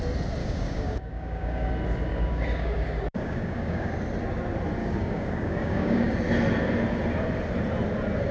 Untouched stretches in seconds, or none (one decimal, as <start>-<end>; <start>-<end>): 0.0-0.4; 1.7-2.1; 3.9-4.8; 6.1-8.3